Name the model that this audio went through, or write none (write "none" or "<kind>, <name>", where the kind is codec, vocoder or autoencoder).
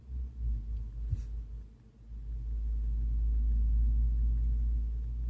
none